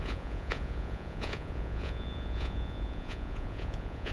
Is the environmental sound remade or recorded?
remade